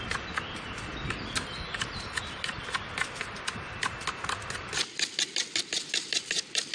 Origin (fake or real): real